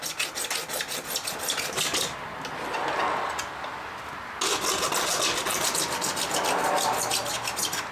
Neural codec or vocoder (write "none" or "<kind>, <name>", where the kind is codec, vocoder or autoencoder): none